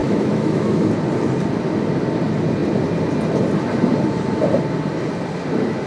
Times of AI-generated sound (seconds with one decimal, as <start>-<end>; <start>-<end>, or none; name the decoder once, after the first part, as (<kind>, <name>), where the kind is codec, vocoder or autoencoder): 0.0-0.9 (autoencoder, DAC-VAE)